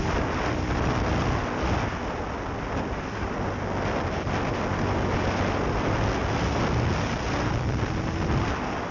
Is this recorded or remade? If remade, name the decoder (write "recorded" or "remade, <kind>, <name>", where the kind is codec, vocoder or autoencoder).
recorded